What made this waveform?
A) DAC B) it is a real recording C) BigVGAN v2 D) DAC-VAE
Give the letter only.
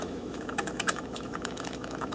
D